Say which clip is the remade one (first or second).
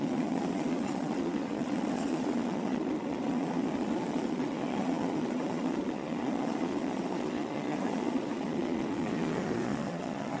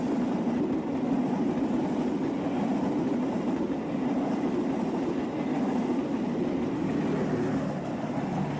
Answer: first